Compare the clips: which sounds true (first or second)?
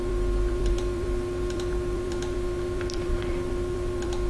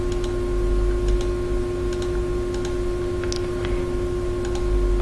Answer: second